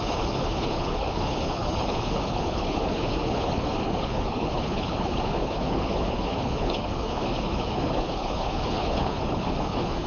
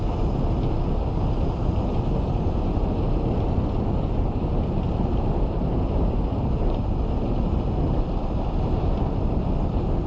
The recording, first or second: second